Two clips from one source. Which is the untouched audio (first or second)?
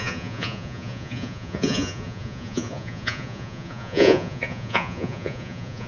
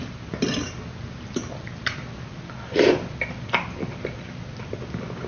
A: second